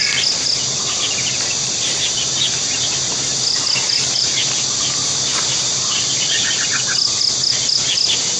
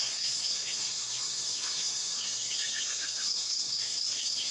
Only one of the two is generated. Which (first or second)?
second